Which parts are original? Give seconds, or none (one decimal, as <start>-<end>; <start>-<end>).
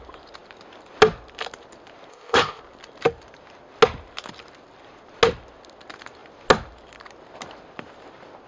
0.0-2.1; 2.6-8.5